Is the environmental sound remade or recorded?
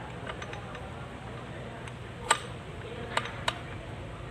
recorded